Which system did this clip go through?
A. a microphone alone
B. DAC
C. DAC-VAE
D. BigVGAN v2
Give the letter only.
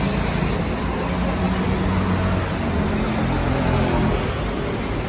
A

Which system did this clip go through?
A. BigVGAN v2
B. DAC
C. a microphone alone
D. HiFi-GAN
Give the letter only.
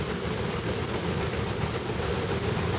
C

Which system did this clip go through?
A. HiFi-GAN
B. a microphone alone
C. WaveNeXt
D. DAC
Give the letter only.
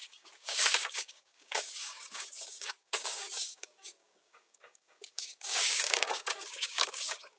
D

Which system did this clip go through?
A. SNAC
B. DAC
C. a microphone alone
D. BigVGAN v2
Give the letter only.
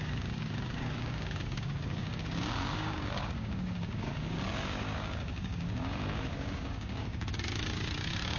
B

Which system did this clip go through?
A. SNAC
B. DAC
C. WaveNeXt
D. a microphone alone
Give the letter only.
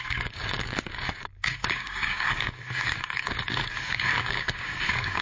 B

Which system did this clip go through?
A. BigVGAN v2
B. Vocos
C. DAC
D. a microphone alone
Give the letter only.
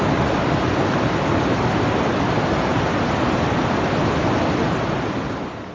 D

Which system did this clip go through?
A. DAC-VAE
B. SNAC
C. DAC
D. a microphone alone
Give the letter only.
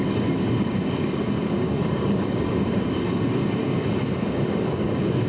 C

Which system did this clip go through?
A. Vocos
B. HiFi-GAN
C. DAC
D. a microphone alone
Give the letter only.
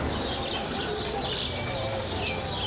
D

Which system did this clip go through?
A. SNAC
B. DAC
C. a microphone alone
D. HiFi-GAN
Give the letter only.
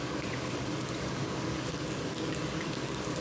B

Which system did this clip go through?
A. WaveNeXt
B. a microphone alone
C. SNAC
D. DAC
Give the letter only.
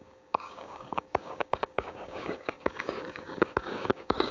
D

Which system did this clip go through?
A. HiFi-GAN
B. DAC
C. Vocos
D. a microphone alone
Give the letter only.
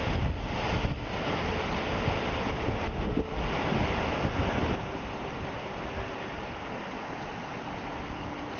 D